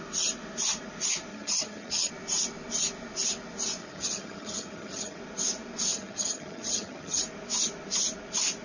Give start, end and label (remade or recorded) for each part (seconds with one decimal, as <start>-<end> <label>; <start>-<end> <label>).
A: 0.0-1.3 recorded; 1.3-2.1 remade; 2.1-3.8 recorded; 3.8-5.2 remade; 5.2-5.9 recorded; 5.9-7.2 remade; 7.2-8.6 recorded